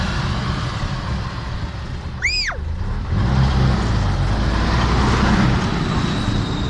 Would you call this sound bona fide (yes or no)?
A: yes